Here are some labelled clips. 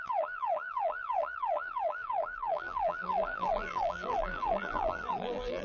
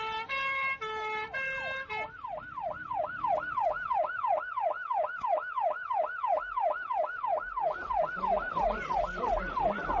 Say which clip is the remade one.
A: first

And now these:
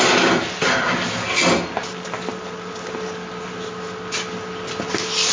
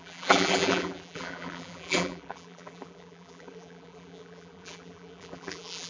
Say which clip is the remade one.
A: second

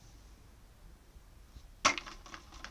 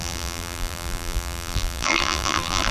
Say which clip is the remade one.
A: second